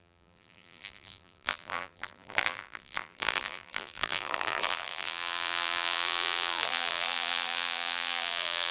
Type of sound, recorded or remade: remade